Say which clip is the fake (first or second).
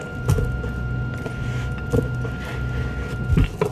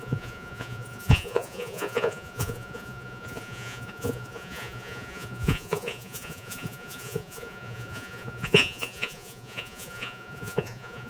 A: second